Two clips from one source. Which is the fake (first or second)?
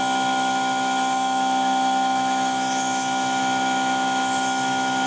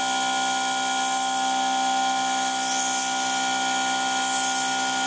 first